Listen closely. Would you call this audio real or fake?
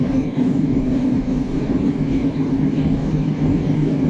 fake